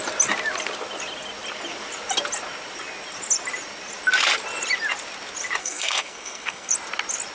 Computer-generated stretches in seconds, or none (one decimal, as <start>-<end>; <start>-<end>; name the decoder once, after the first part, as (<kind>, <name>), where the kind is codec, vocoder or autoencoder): 5.6-6.7 (codec, SNAC)